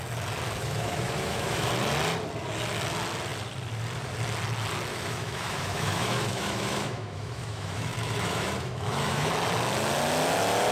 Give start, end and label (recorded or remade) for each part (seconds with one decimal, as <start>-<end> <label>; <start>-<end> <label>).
0.0-0.6 recorded; 0.6-1.7 remade; 1.7-4.9 recorded; 4.9-9.3 remade; 9.3-10.7 recorded